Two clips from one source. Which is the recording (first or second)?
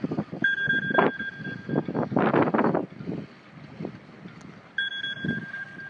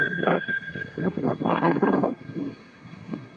first